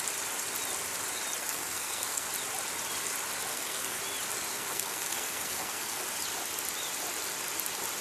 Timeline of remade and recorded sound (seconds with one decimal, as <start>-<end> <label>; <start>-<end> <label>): 0.0-1.4 recorded; 1.4-2.3 remade; 2.3-3.5 recorded; 3.5-4.0 remade; 4.0-4.5 recorded; 4.5-6.0 remade; 6.0-8.0 recorded